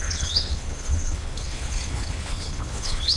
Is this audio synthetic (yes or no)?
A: yes